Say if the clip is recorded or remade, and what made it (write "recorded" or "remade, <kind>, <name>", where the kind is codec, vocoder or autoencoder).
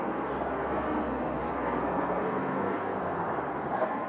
remade, codec, SNAC